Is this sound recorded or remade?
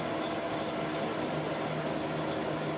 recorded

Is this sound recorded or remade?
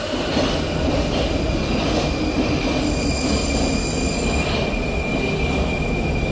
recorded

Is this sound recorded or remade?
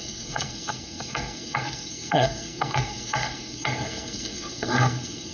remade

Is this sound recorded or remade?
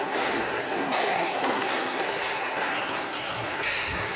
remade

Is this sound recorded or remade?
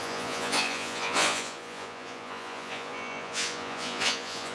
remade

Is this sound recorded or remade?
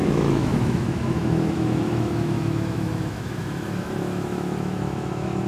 remade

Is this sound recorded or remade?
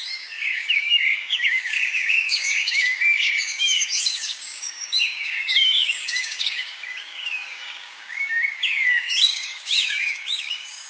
remade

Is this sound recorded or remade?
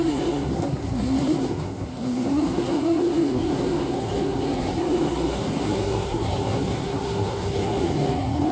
remade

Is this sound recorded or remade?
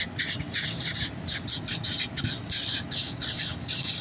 recorded